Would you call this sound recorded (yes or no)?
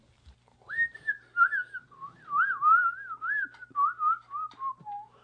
yes